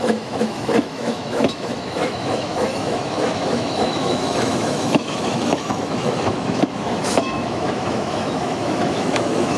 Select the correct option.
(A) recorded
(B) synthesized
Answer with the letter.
B